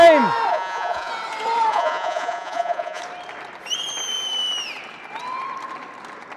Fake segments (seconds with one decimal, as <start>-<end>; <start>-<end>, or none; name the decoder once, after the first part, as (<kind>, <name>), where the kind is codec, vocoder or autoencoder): 0.5-1.1 (vocoder, Vocos); 1.7-3.0